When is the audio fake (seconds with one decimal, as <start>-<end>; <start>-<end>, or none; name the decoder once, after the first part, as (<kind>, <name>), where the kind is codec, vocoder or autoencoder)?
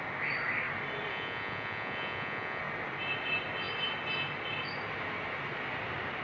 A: 1.1-2.6 (vocoder, Vocos)